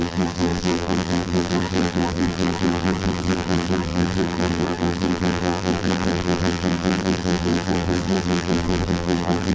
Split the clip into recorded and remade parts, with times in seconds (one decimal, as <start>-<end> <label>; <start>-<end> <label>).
0.0-9.5 remade